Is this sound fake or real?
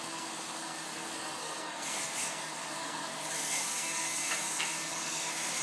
fake